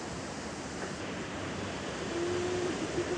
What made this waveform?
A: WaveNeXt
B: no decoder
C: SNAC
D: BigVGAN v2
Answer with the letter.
B